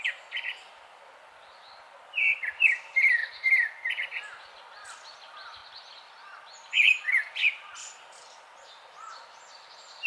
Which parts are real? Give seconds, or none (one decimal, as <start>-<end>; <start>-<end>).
3.2-3.8; 5.6-8.0